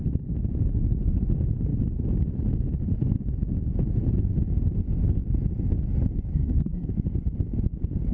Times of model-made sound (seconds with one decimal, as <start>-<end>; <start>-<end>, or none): 6.3-6.9